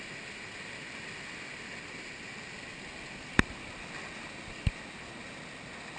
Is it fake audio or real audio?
real